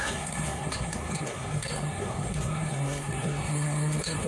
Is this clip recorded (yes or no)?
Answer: no